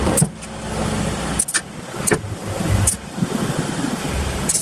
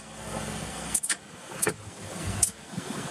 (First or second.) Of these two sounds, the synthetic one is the second